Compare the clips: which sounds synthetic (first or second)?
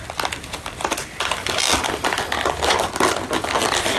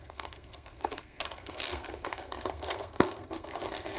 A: second